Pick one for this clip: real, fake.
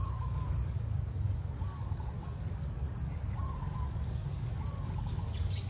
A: fake